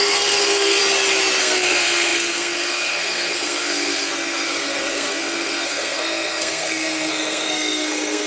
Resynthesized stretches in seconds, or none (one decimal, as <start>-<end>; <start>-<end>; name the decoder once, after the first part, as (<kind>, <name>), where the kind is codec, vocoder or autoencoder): 0.0-0.8 (codec, SNAC); 1.4-8.3